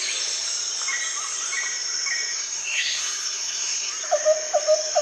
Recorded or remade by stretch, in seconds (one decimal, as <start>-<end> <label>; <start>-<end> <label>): 0.0-2.4 recorded; 2.4-3.9 remade; 3.9-5.0 recorded